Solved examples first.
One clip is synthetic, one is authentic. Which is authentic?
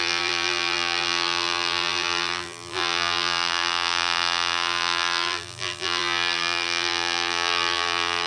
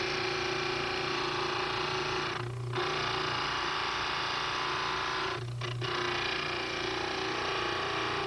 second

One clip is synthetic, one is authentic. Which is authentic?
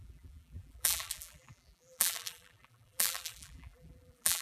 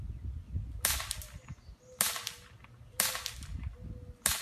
second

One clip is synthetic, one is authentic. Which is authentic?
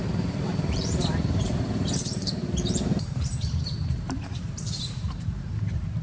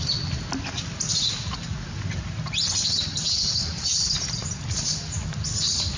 second